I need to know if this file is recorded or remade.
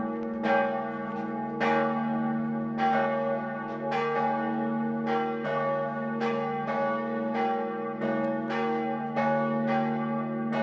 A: recorded